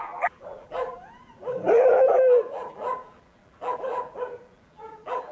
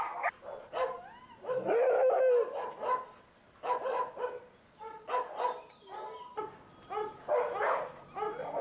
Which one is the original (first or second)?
second